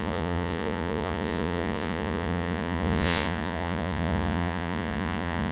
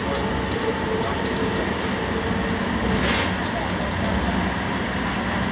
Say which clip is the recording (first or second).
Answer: second